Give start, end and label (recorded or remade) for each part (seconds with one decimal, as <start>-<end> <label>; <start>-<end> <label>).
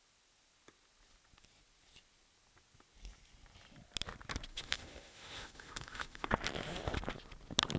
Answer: 0.0-4.5 recorded; 4.5-6.3 remade; 6.3-7.8 recorded